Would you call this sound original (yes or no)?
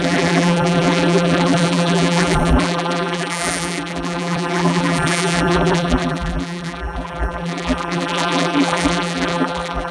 no